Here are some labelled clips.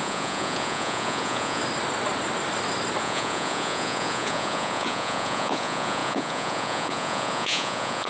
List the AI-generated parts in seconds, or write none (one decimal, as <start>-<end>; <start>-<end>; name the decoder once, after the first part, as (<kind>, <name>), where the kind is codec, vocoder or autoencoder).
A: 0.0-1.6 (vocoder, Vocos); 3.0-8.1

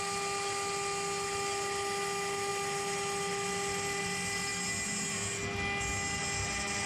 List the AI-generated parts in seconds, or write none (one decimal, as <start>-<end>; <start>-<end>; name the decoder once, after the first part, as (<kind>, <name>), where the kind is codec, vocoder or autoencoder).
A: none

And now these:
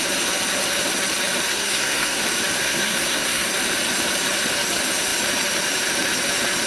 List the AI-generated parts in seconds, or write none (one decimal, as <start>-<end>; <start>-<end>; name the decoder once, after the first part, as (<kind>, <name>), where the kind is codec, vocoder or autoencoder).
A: 1.5-2.2 (codec, SNAC); 2.6-3.5